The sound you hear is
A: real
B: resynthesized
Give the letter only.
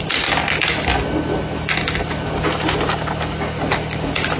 A